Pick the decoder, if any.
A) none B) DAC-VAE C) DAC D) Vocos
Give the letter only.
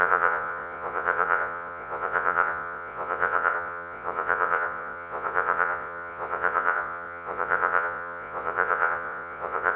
D